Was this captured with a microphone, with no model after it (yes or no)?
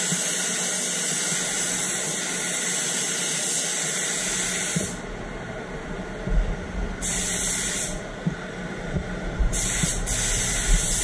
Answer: yes